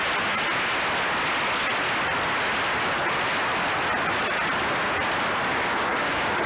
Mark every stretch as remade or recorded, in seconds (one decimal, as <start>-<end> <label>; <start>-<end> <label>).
0.0-5.5 recorded; 5.5-6.5 remade